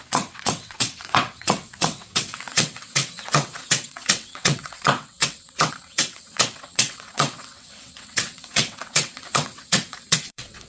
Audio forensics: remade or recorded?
remade